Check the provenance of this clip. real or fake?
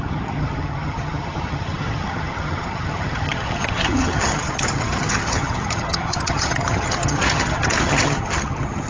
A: fake